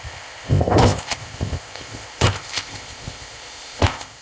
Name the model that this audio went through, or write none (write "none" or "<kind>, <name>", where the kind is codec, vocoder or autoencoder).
codec, ZipCodec